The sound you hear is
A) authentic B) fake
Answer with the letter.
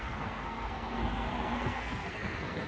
B